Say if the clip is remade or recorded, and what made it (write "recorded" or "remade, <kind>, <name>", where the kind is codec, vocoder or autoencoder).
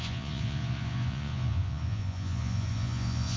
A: remade, vocoder, Vocos